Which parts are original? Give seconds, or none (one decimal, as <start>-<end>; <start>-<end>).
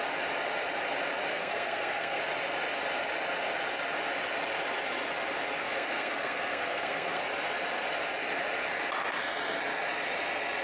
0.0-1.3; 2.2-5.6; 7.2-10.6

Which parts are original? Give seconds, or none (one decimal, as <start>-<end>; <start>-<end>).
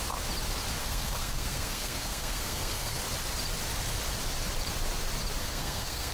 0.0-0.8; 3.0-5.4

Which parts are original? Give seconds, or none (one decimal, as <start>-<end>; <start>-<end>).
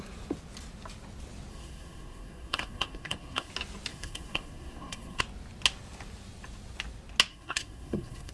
0.0-1.5; 3.5-3.9; 5.2-7.3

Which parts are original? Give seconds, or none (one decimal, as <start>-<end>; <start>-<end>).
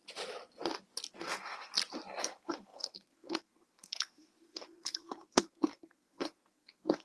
0.0-1.1; 1.7-2.2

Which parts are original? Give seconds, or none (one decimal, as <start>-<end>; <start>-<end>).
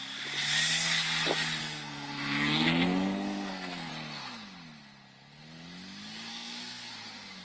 0.0-1.6; 3.9-6.3; 6.9-7.4